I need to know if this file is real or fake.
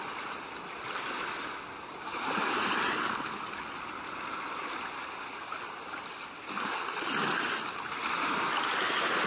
real